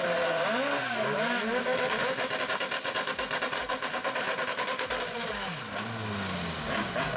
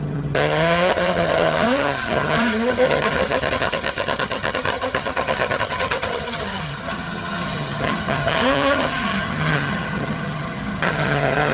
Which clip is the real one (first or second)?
first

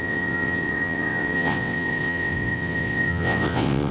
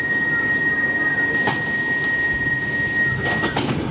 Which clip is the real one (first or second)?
second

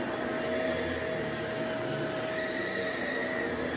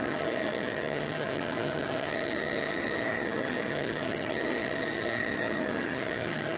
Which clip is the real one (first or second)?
first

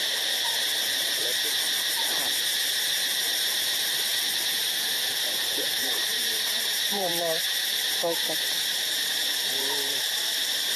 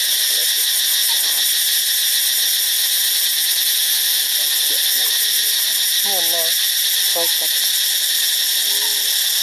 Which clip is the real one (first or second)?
second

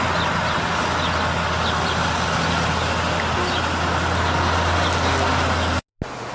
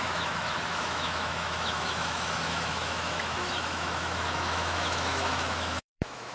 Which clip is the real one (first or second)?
first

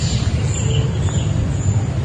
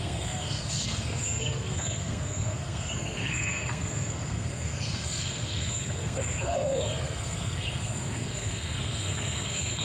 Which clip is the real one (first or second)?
first